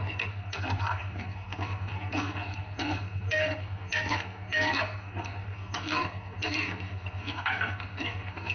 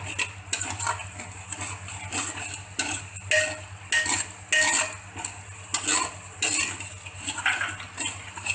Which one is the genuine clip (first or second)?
second